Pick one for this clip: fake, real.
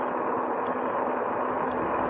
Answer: real